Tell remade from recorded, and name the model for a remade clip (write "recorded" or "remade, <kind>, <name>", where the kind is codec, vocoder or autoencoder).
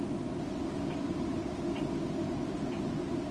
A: recorded